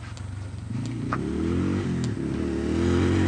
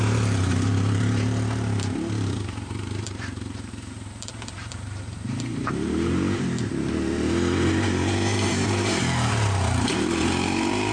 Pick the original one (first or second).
first